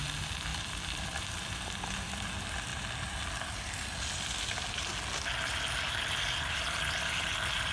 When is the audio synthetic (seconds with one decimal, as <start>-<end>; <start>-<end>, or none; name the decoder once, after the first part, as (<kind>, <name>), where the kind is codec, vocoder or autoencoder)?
0.5-2.3 (vocoder, BigVGAN v2)